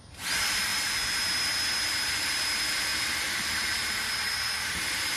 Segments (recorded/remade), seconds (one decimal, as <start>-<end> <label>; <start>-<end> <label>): 0.0-0.7 remade; 0.7-2.2 recorded; 2.2-5.2 remade

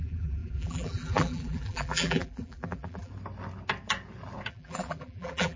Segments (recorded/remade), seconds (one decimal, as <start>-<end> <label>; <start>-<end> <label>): 0.0-3.1 remade; 3.1-4.5 recorded; 4.5-5.6 remade

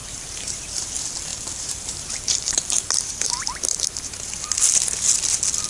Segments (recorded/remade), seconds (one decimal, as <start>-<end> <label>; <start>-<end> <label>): 0.0-0.9 remade; 0.9-1.3 recorded; 1.3-4.3 remade; 4.3-5.7 recorded

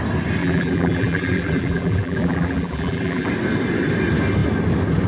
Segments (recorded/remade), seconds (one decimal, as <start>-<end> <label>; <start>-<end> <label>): 0.0-0.4 recorded; 0.4-3.3 remade; 3.3-5.1 recorded

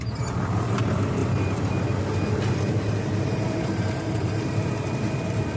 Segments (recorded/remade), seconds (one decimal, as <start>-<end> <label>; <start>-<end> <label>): 0.0-1.2 remade; 1.2-2.3 recorded; 2.3-5.6 remade

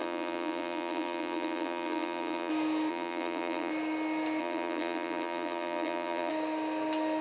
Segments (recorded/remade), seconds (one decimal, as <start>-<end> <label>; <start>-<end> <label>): 0.0-2.5 remade; 2.5-2.9 recorded; 2.9-3.7 remade; 3.7-4.4 recorded; 4.4-6.3 remade; 6.3-7.2 recorded

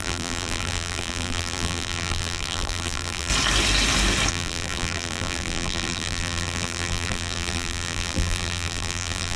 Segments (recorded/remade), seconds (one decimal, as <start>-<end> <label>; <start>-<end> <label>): 0.0-3.3 remade; 3.3-4.3 recorded; 4.3-9.4 remade